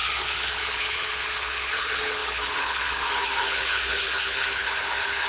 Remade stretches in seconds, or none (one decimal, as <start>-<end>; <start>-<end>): 0.0-5.3